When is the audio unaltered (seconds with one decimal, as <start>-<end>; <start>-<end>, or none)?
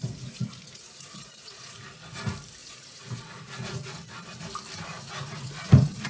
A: 1.9-2.6; 4.0-4.9